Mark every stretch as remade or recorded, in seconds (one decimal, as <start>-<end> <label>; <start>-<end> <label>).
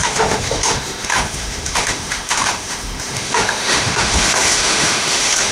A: 0.0-5.5 remade